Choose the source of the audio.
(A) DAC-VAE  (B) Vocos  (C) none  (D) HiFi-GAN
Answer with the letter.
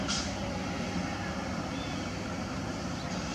C